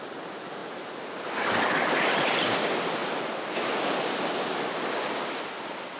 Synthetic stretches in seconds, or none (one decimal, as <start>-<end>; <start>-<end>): none